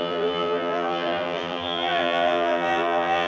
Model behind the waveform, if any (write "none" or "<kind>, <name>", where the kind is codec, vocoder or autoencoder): vocoder, BigVGAN v2